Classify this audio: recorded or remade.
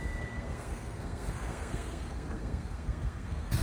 remade